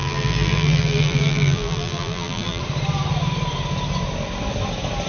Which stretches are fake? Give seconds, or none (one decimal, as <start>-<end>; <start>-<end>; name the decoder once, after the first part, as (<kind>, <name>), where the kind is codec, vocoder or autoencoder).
0.0-2.6 (vocoder, BigVGAN v2)